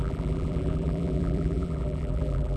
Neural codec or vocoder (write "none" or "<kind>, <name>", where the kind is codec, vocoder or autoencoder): vocoder, BigVGAN v2